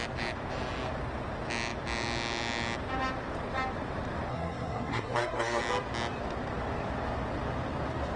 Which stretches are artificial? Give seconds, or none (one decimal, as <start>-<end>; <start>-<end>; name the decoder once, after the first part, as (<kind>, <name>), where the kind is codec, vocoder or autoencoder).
4.3-5.6 (codec, SNAC)